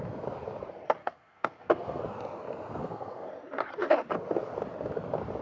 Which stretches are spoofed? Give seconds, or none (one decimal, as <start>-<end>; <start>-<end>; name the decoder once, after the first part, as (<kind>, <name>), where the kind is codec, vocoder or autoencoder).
1.0-2.0 (codec, SNAC); 2.8-3.3